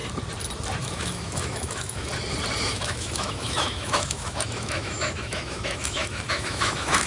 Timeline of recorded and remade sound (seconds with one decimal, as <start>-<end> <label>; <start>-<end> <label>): 0.0-0.8 recorded; 0.8-2.1 remade; 2.1-2.7 recorded; 2.7-7.1 remade